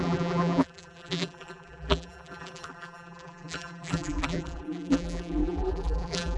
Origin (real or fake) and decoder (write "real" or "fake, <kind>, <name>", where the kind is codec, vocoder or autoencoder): fake, vocoder, BigVGAN v2